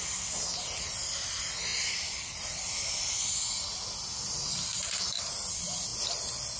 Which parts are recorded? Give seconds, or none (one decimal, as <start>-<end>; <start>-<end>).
0.0-1.7; 3.0-6.6